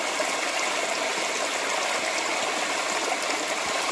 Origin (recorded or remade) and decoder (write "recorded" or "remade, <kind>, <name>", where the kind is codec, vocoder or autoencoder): recorded